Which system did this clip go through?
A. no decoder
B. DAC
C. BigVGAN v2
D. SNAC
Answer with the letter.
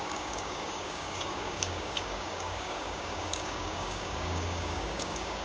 B